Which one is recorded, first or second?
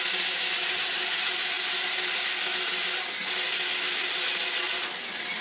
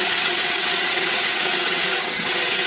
first